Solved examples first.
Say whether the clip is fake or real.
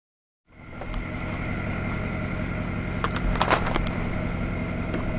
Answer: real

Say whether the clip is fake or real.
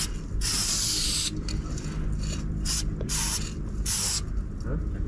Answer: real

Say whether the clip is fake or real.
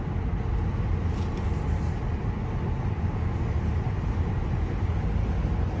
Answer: real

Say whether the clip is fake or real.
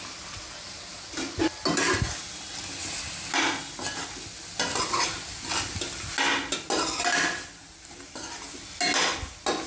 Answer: real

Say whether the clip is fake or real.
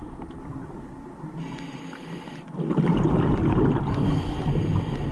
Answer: real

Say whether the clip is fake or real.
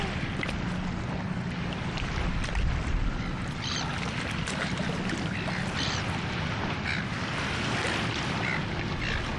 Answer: real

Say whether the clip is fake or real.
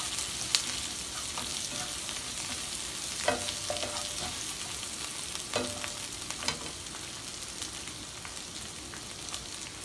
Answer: real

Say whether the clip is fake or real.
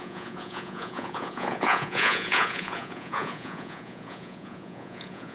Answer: fake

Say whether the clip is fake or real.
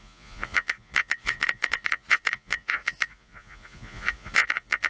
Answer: fake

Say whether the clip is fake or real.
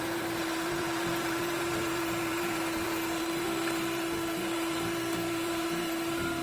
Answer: fake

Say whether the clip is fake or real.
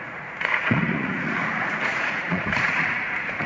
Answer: fake